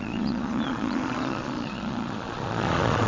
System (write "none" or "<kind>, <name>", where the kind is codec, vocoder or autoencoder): vocoder, Vocos